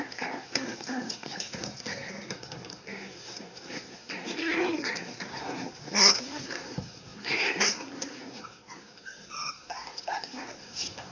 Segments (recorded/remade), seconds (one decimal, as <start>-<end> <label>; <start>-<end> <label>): 0.0-11.1 remade

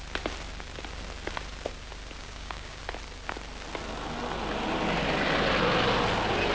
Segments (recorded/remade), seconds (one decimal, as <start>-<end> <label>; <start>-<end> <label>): 0.0-2.2 recorded; 2.2-2.8 remade; 2.8-6.5 recorded

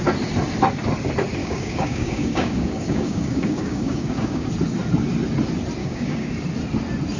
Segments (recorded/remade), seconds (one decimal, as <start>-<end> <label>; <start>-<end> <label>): 0.0-1.4 recorded; 1.4-4.5 remade; 4.5-5.8 recorded; 5.8-6.3 remade; 6.3-7.2 recorded

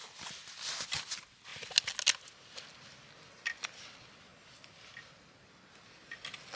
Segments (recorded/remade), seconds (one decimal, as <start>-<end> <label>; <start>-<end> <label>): 0.0-6.6 recorded